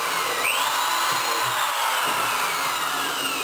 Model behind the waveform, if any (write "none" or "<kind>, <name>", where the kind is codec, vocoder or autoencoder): none